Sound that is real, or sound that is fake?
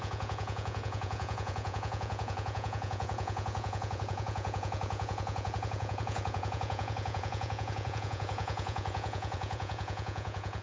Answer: fake